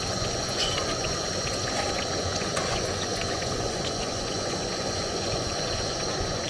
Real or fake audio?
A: fake